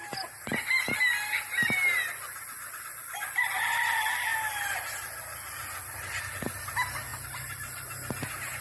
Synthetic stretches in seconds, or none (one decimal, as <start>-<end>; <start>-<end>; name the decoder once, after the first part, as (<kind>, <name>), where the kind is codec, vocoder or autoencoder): none

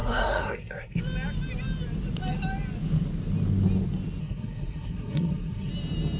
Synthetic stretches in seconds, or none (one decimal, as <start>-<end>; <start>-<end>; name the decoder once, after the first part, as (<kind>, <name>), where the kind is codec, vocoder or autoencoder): 0.0-1.0 (codec, SNAC); 4.2-5.7

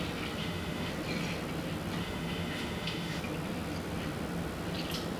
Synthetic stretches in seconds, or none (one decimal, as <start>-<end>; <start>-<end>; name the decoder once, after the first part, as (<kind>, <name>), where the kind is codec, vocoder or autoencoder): 0.4-0.9 (autoencoder, DAC-VAE); 2.0-3.2